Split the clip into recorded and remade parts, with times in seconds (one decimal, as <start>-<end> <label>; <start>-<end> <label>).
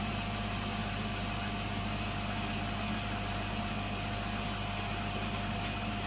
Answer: 0.0-6.1 recorded